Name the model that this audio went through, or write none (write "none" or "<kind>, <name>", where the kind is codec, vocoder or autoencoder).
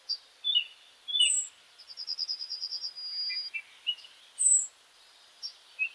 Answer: none